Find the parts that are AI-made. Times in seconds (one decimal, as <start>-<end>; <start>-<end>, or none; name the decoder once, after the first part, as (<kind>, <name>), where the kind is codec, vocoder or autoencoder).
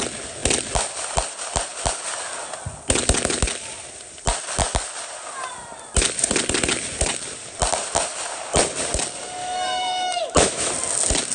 9.4-10.7 (autoencoder, DAC-VAE)